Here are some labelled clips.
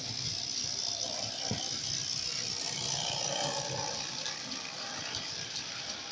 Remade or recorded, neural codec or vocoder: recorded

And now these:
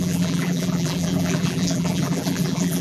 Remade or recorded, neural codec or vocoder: remade, vocoder, BigVGAN v2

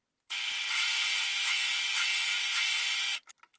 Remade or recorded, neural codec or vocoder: recorded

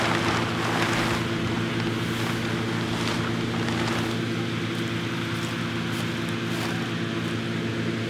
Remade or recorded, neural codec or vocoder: recorded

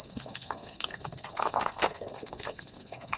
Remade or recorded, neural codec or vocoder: remade, codec, SNAC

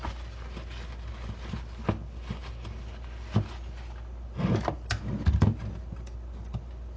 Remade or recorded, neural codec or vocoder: recorded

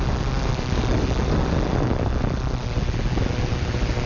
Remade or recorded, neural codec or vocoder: recorded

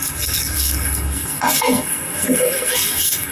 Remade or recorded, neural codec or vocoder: remade, codec, SNAC